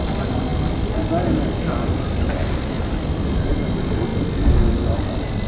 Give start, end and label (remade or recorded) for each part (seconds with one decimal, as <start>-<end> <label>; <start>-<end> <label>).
0.0-5.5 recorded